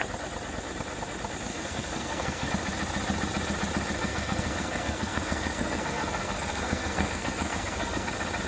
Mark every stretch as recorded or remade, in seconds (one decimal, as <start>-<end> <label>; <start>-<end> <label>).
0.0-1.5 recorded; 1.5-2.5 remade; 2.5-4.0 recorded; 4.0-8.1 remade; 8.1-8.5 recorded